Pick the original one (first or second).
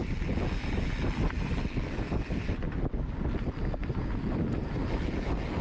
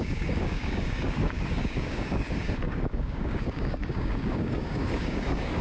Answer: first